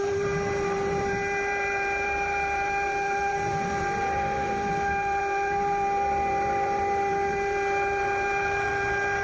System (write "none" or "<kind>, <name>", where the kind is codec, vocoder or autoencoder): vocoder, BigVGAN v2